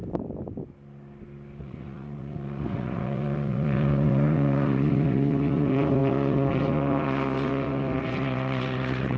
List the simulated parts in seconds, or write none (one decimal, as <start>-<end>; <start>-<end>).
1.6-9.2